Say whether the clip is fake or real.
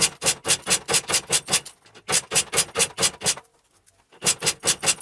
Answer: real